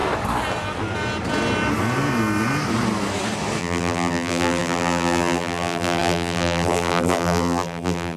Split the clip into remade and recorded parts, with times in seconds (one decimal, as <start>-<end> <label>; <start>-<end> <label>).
0.0-3.6 recorded; 3.6-8.2 remade